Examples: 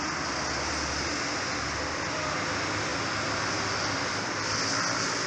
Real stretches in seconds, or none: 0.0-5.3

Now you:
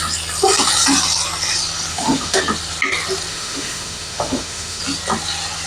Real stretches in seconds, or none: 0.0-1.9; 2.4-3.3; 4.8-5.7

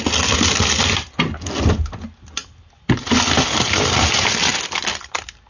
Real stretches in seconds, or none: 0.0-5.5

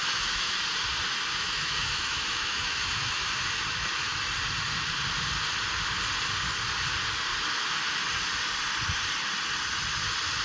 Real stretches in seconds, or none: 0.6-1.3; 4.3-10.4